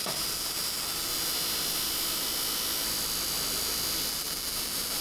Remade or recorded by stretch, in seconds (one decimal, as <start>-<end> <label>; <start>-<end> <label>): 0.0-1.1 remade; 1.1-4.1 recorded; 4.1-5.0 remade